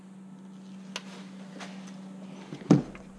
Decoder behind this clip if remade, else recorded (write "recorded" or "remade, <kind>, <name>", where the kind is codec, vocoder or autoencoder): recorded